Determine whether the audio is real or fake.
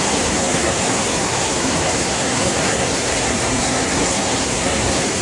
fake